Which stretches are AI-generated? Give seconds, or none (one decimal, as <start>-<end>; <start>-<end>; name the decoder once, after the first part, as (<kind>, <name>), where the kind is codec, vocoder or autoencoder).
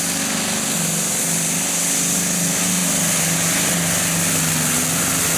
none